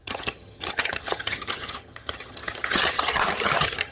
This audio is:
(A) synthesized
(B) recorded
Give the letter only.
A